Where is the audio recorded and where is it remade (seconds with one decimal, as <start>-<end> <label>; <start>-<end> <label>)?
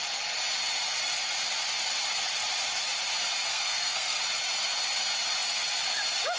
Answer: 0.0-3.5 recorded; 3.5-4.2 remade; 4.2-6.4 recorded